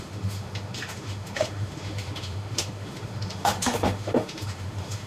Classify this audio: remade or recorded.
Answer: remade